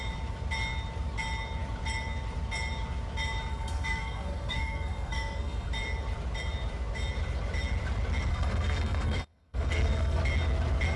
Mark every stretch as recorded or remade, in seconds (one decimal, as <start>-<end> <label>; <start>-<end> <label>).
0.0-3.5 recorded; 3.5-5.7 remade; 5.7-8.3 recorded; 8.3-10.2 remade; 10.2-11.0 recorded